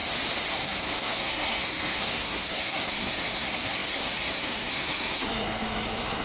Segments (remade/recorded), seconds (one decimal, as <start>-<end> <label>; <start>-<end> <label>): 0.0-0.5 recorded; 0.5-6.2 remade